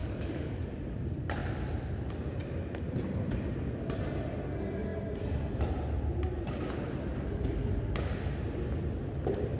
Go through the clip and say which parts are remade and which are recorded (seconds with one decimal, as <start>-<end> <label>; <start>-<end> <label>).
0.0-0.7 remade; 0.7-7.1 recorded; 7.1-8.1 remade; 8.1-9.6 recorded